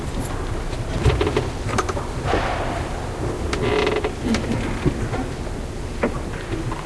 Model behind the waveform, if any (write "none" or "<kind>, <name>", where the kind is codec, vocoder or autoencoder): none